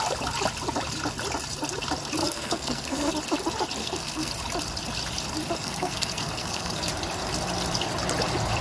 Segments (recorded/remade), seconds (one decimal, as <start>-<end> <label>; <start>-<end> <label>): 0.0-2.2 recorded; 2.2-3.1 remade; 3.1-3.8 recorded; 3.8-4.3 remade; 4.3-5.6 recorded; 5.6-6.9 remade; 6.9-8.6 recorded